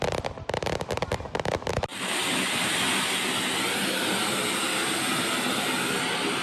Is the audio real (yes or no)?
yes